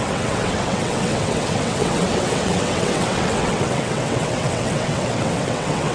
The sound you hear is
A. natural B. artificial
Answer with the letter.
B